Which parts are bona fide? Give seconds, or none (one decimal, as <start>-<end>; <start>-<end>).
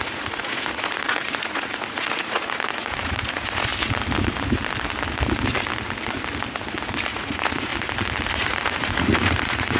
3.7-7.1; 7.7-8.3